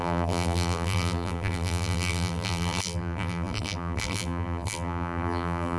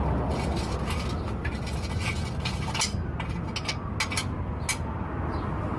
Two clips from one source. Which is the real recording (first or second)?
second